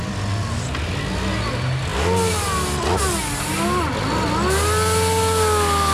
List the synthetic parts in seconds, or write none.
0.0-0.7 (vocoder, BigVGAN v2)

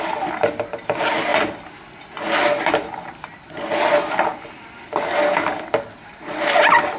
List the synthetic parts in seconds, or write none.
none

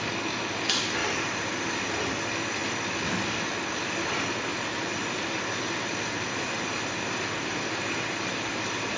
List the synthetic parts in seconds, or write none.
1.0-1.7 (vocoder, BigVGAN v2); 4.5-9.0

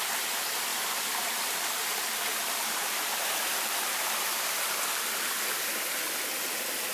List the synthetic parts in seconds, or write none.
0.7-4.8 (vocoder, BigVGAN v2)